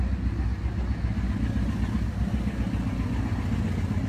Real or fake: real